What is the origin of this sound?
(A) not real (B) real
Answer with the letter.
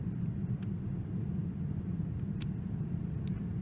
B